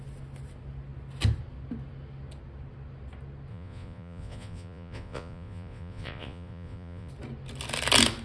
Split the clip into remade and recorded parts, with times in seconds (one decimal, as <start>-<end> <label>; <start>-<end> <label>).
0.0-3.5 recorded; 3.5-7.1 remade; 7.1-8.2 recorded